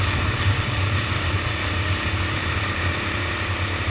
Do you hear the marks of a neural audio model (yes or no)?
no